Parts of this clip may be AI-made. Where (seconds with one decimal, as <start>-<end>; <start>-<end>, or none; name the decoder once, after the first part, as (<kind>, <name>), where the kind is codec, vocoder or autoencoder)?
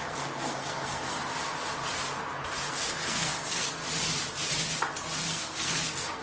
0.0-1.2 (codec, SNAC); 2.7-3.8; 5.2-6.2